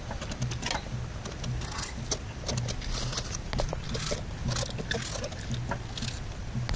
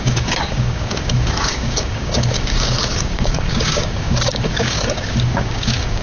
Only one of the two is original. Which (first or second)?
first